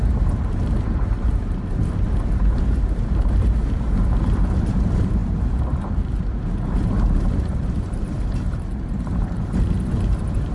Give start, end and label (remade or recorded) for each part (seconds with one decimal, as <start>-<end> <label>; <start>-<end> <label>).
0.0-10.5 remade